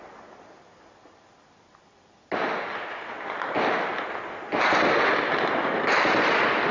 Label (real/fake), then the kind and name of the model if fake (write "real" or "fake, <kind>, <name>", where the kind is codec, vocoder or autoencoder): real